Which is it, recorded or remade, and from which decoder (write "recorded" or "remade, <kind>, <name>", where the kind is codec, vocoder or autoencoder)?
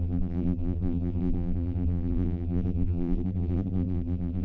remade, vocoder, BigVGAN v2